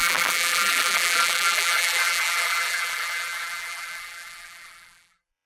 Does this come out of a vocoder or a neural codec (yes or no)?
yes